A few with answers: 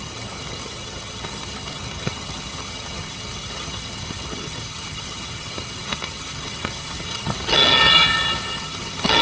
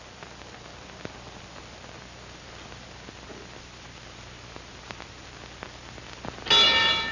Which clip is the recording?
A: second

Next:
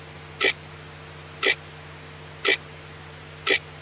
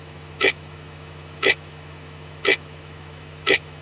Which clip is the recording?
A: first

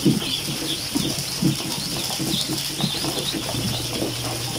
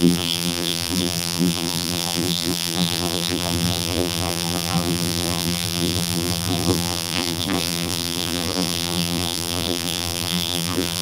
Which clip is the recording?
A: first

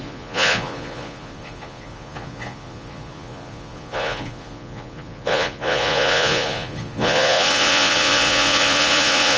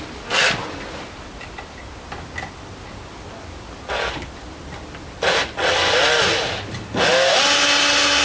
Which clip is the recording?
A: second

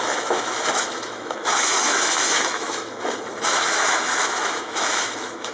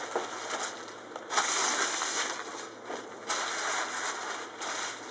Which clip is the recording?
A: second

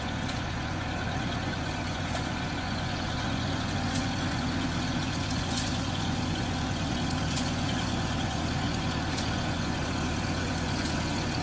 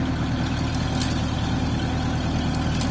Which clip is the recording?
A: second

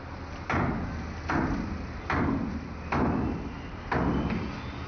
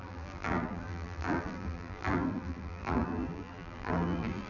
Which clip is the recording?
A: first